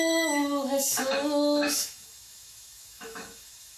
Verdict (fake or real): fake